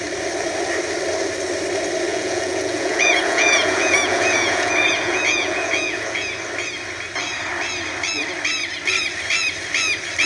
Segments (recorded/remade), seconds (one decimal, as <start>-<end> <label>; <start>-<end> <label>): 0.0-2.1 recorded; 2.1-6.3 remade; 6.3-10.3 recorded